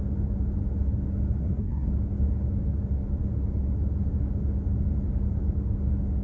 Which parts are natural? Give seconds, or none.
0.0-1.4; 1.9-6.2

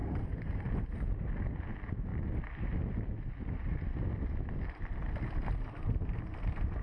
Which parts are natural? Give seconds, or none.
0.7-6.8

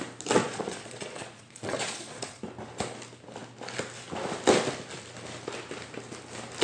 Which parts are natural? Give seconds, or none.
0.0-0.4; 2.4-6.6

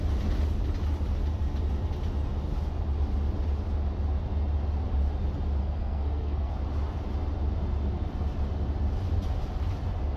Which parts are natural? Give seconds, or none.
0.0-5.6; 6.5-10.2

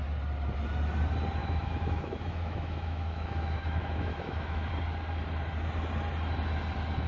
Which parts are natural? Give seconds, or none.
0.0-1.4; 4.7-7.1

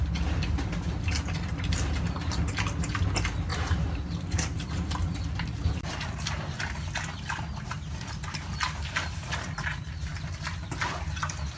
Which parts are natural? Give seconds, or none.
0.0-3.5; 5.9-11.6